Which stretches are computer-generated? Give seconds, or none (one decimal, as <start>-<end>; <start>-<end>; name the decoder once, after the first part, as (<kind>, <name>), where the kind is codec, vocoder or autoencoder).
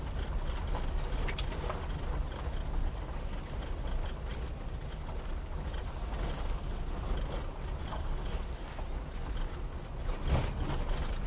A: none